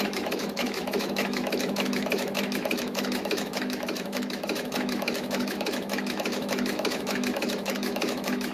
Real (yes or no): no